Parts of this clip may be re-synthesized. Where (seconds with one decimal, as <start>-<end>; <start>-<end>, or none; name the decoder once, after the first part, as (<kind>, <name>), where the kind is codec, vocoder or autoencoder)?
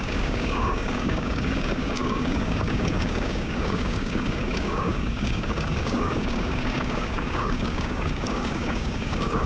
0.0-9.5 (codec, DAC)